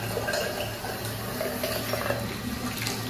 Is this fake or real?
real